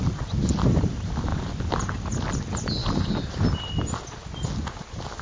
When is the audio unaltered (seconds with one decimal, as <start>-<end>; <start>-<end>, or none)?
0.0-5.2